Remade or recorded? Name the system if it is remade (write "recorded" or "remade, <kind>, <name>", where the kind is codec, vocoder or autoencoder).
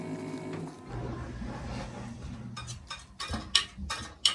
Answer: recorded